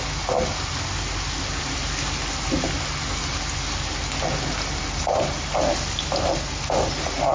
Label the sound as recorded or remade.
recorded